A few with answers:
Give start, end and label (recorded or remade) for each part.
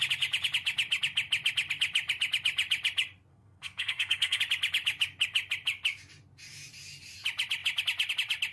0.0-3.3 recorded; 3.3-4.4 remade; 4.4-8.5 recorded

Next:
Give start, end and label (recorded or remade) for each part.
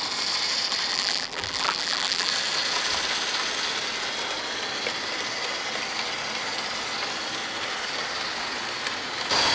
0.0-0.9 recorded; 0.9-2.3 remade; 2.3-9.5 recorded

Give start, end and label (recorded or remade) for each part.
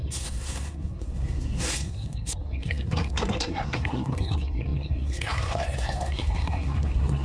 0.0-7.2 remade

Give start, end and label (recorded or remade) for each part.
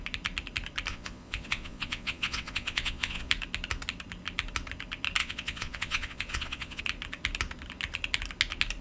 0.0-0.9 recorded; 0.9-3.3 remade; 3.3-5.2 recorded; 5.2-6.8 remade; 6.8-8.8 recorded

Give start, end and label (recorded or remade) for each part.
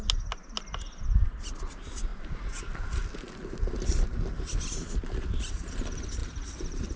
0.0-6.2 recorded; 6.2-7.0 remade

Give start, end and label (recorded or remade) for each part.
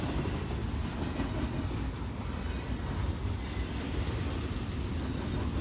0.0-5.6 recorded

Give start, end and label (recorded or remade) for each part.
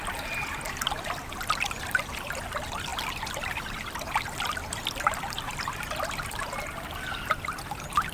0.0-8.1 recorded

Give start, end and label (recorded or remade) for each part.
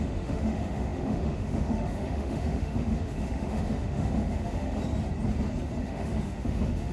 0.0-4.8 remade; 4.8-5.8 recorded; 5.8-6.9 remade